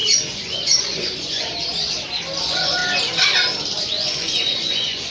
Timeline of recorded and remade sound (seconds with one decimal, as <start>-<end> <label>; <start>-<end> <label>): 0.0-1.5 remade; 1.5-2.4 recorded; 2.4-2.8 remade; 2.8-3.8 recorded; 3.8-5.1 remade